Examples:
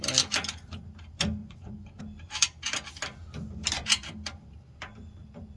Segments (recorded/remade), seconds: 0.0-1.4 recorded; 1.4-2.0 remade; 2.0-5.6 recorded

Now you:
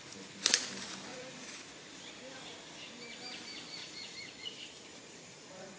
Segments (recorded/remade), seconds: 0.0-1.1 recorded; 1.1-2.1 remade; 2.1-3.8 recorded; 3.8-4.5 remade; 4.5-4.9 recorded; 4.9-5.8 remade